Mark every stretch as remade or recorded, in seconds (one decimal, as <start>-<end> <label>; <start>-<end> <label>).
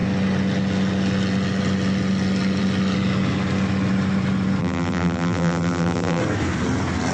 0.0-4.6 recorded; 4.6-6.2 remade; 6.2-7.1 recorded